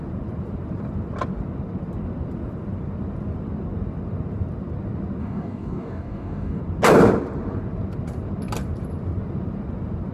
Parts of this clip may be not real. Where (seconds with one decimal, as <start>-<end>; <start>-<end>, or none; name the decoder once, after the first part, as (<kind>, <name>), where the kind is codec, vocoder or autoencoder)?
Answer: 5.2-6.6 (codec, DAC)